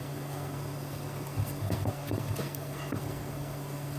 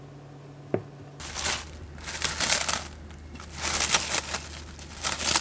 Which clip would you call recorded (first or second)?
second